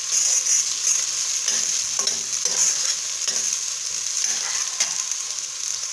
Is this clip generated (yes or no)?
no